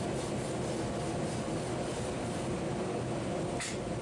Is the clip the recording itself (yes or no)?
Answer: yes